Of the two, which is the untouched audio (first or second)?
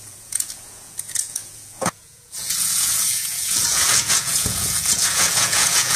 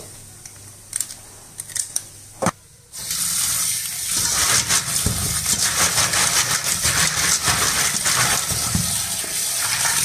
second